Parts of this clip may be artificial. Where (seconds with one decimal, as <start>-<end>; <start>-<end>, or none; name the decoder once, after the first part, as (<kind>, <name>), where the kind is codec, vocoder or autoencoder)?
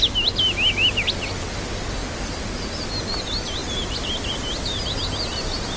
none